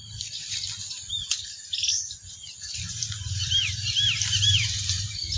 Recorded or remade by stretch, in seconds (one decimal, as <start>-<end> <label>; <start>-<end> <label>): 0.0-2.3 recorded; 2.3-5.4 remade